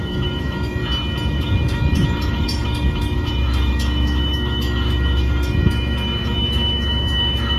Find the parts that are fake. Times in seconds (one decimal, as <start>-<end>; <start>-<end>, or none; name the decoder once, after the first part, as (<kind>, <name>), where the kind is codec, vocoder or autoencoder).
0.0-0.8 (autoencoder, DAC-VAE); 1.3-7.6